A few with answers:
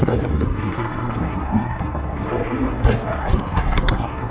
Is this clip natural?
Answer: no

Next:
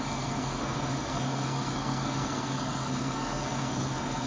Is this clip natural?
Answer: no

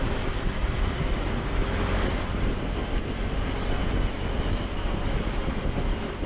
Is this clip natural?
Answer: yes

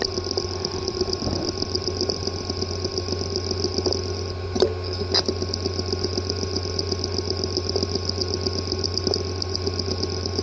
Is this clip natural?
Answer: yes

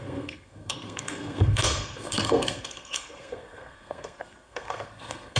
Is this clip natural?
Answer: no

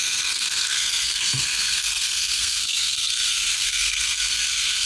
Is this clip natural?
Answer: no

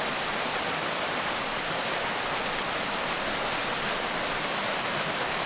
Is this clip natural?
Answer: yes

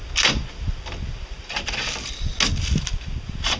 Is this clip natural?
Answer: yes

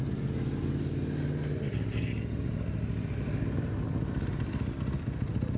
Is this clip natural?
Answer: yes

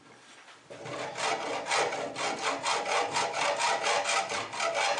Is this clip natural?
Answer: yes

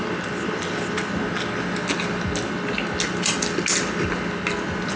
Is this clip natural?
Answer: yes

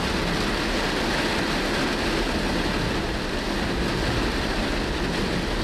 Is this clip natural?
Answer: yes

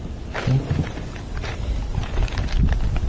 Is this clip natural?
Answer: yes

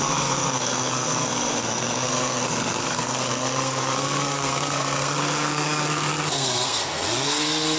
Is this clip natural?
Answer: no